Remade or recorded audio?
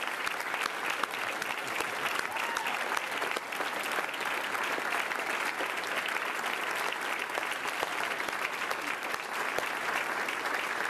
recorded